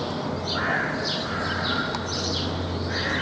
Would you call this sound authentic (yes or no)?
yes